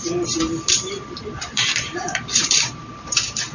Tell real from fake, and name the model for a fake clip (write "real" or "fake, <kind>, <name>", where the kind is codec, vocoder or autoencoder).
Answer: fake, vocoder, BigVGAN v2